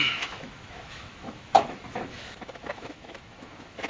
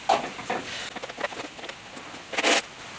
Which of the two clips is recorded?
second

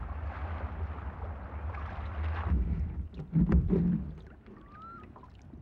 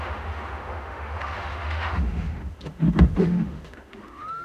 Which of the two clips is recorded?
first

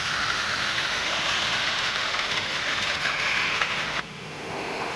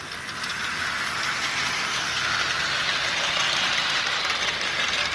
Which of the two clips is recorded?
second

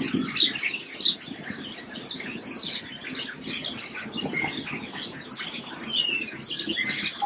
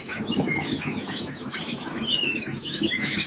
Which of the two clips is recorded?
first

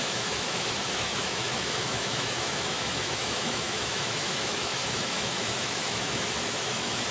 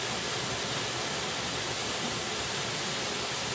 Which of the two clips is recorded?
second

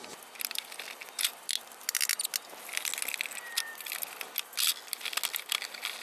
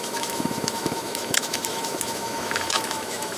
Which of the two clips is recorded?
first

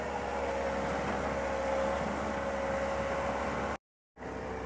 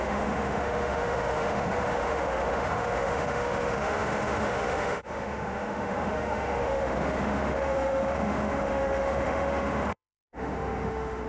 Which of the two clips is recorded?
first